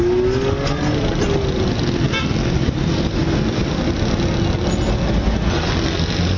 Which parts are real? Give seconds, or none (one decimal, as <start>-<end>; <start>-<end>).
0.0-6.4